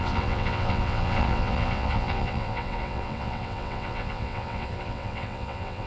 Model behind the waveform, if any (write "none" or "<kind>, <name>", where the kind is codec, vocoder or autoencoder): vocoder, WaveNeXt